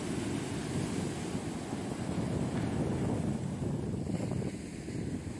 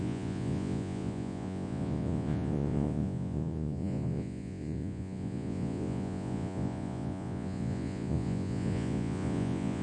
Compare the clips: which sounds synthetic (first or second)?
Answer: second